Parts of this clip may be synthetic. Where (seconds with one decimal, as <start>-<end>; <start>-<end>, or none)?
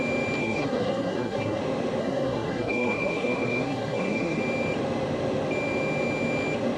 0.4-1.6; 2.0-4.4